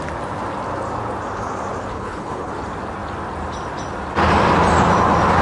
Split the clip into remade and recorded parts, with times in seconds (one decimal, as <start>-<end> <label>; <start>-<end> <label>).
0.0-1.9 recorded; 1.9-2.5 remade; 2.5-5.4 recorded